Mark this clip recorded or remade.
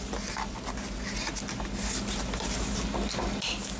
recorded